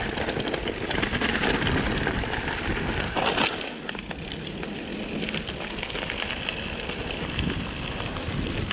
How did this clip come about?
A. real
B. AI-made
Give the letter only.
A